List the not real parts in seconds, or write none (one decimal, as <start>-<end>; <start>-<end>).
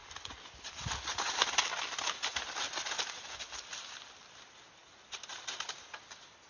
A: none